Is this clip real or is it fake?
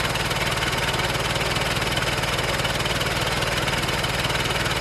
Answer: real